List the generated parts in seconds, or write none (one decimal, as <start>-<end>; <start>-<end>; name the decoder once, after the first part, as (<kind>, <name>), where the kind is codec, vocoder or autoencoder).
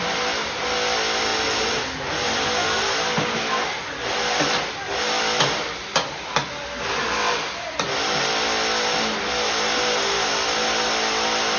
none